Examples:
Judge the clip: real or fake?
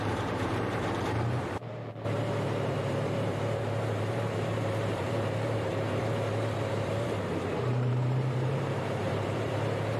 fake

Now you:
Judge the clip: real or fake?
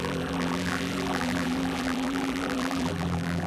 fake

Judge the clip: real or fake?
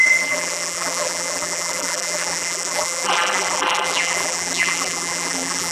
fake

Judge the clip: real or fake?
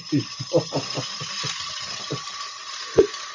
fake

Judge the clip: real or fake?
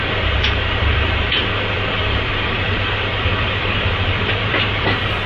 fake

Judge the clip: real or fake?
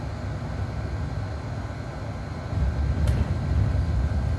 real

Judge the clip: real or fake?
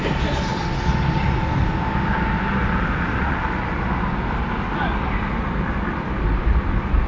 real